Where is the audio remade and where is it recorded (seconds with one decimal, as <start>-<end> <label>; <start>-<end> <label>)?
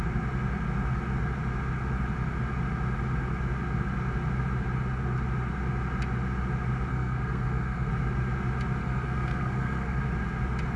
0.0-6.9 recorded; 6.9-7.9 remade; 7.9-8.8 recorded; 8.8-10.0 remade; 10.0-10.8 recorded